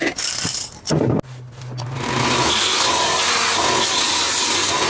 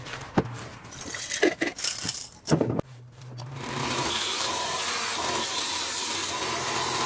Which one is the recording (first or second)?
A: first